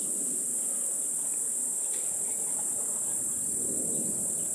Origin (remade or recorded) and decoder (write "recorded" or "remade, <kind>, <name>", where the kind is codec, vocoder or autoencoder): recorded